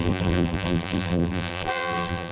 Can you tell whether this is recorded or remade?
remade